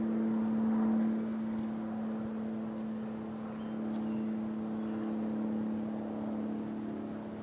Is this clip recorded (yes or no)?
yes